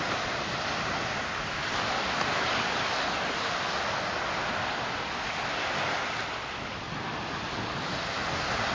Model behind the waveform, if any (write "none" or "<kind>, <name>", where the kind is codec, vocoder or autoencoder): none